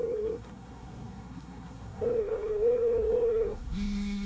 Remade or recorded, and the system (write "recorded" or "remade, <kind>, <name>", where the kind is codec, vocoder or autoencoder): remade, codec, SNAC